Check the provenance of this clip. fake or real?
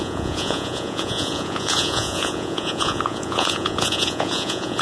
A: fake